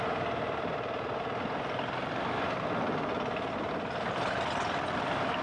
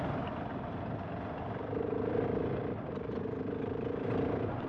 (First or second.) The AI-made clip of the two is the second